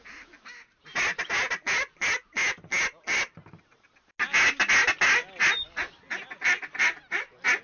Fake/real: real